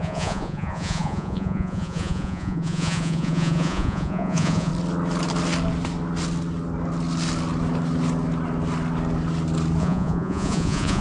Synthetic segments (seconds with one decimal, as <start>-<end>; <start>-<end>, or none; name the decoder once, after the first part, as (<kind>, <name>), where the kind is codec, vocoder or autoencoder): 0.0-4.7 (vocoder, Vocos); 9.8-11.0